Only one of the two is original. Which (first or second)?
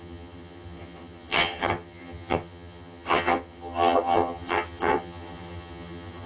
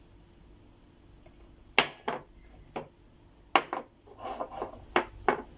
second